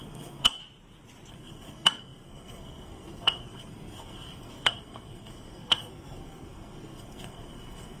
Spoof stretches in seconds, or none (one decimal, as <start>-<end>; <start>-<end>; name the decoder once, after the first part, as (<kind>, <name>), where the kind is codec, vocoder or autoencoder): 0.0-0.6 (codec, SNAC); 1.3-8.0